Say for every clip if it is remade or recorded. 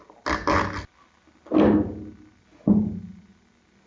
recorded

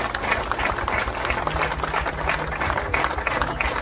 recorded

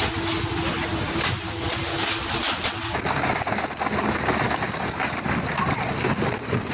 recorded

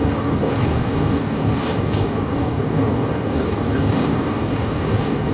remade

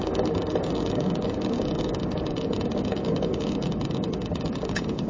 remade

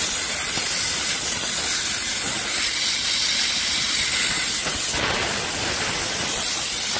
recorded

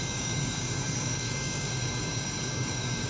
remade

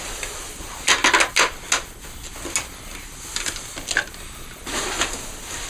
recorded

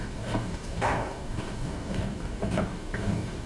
remade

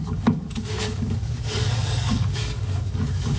remade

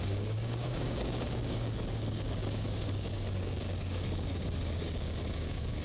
remade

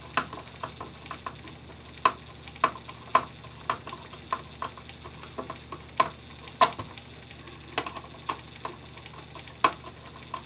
recorded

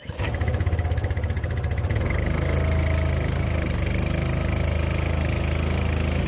recorded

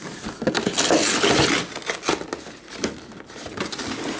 recorded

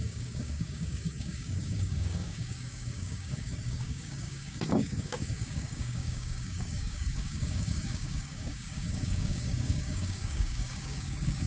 remade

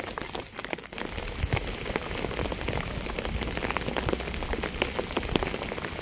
recorded